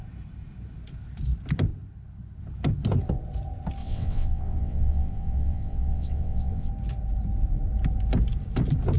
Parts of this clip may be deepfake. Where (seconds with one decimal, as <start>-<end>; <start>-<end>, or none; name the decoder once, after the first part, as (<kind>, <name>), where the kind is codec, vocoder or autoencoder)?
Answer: 3.8-6.7 (vocoder, WaveNeXt)